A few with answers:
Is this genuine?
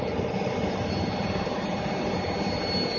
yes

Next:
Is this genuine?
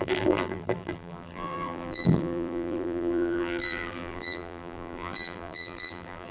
no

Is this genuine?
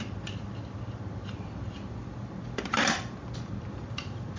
yes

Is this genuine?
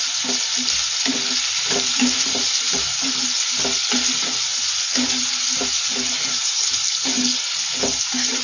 yes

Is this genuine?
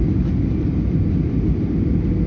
yes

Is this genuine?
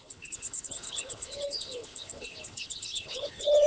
no